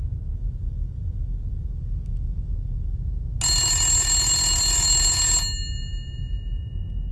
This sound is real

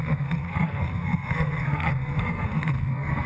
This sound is fake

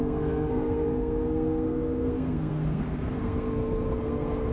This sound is fake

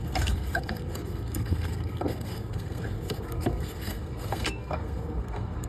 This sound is fake